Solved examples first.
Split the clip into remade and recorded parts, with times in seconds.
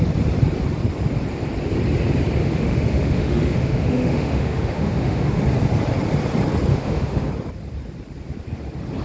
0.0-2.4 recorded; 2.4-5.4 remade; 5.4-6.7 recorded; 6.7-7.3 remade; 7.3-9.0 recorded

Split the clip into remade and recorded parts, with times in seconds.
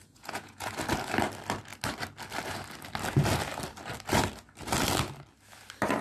0.0-0.7 remade; 0.7-6.0 recorded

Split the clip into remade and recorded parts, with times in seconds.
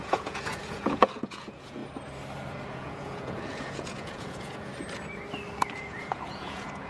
0.0-1.8 remade; 1.8-2.7 recorded; 2.7-4.7 remade; 4.7-5.7 recorded; 5.7-6.9 remade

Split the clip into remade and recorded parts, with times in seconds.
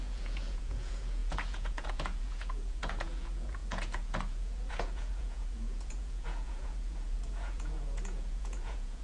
0.0-9.0 remade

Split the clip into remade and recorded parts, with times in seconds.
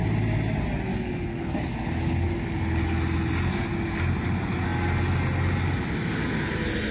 0.0-0.9 recorded; 0.9-2.8 remade; 2.8-6.9 recorded